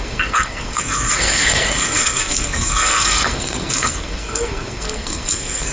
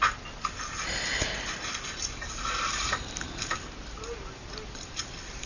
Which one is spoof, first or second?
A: first